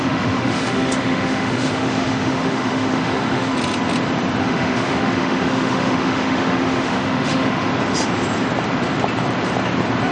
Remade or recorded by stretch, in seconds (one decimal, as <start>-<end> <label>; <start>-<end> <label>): 0.0-3.5 remade; 3.5-4.4 recorded; 4.4-7.7 remade; 7.7-10.1 recorded